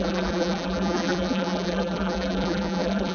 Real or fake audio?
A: fake